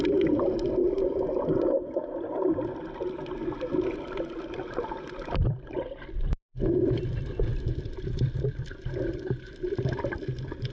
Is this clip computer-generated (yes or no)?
yes